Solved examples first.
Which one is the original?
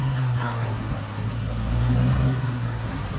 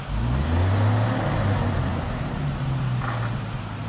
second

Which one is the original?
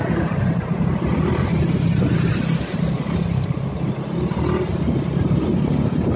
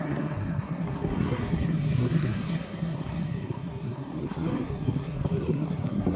first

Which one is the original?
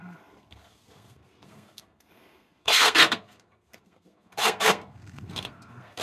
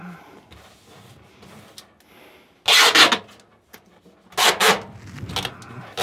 second